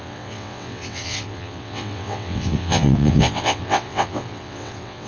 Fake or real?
fake